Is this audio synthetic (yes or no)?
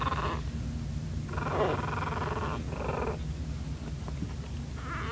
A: no